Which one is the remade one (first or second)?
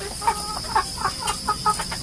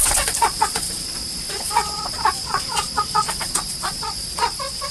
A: second